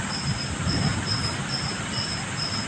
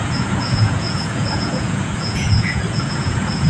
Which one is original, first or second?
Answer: first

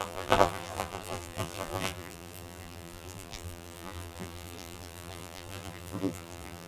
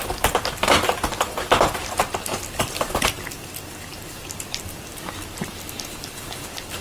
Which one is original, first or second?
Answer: second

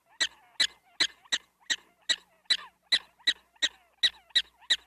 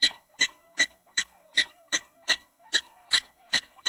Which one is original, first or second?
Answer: first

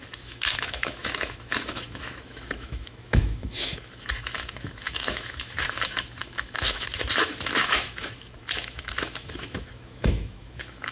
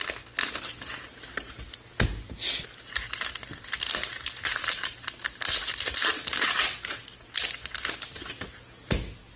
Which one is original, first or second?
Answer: second